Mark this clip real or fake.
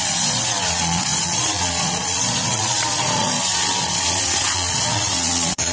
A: fake